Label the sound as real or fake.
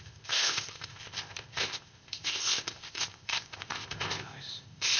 fake